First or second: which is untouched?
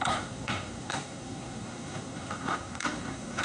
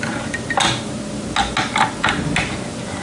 second